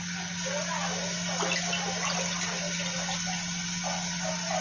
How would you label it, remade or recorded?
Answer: recorded